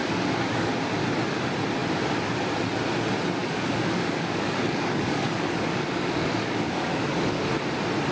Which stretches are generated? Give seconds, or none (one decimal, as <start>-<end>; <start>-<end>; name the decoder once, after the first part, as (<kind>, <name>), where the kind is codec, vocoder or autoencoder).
0.0-0.7 (codec, DAC); 3.4-7.4